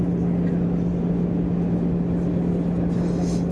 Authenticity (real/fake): real